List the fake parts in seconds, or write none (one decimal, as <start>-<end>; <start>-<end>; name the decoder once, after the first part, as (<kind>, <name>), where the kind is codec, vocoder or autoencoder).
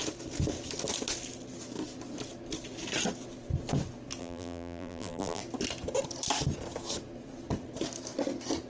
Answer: 4.2-5.4 (vocoder, BigVGAN v2)